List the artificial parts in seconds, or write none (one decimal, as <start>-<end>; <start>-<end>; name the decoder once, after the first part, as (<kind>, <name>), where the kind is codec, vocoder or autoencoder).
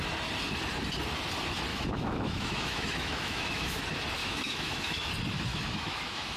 1.7-3.8 (autoencoder, DAC-VAE); 4.2-5.1; 5.5-6.4